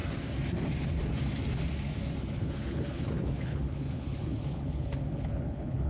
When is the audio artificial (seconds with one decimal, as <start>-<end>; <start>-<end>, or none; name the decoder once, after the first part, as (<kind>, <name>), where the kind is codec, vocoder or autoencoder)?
2.2-5.9 (codec, HILCodec)